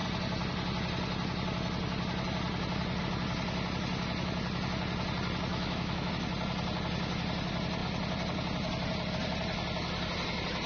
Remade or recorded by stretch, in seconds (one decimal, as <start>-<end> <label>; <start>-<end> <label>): 0.0-5.5 recorded; 5.5-6.1 remade; 6.1-10.7 recorded